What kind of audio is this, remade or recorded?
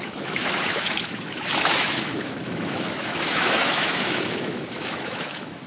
remade